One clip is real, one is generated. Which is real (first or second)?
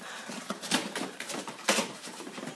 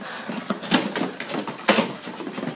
second